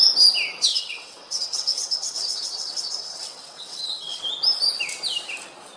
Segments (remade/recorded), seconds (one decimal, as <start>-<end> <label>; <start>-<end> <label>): 0.0-0.7 recorded; 0.7-4.2 remade; 4.2-5.8 recorded